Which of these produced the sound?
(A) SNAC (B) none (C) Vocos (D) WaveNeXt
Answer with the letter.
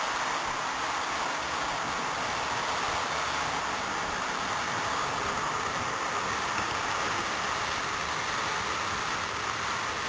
B